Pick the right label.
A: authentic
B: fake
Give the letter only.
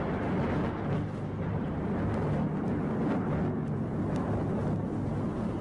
A